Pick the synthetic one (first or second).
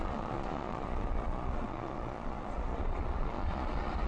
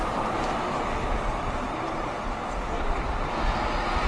first